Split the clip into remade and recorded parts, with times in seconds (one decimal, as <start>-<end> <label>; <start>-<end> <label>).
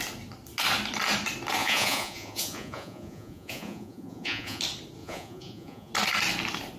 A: 0.0-1.6 recorded; 1.6-4.6 remade; 4.6-5.0 recorded; 5.0-5.9 remade; 5.9-6.8 recorded